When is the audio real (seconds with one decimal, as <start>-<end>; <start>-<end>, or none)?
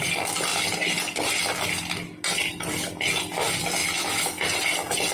0.0-3.8; 4.4-5.1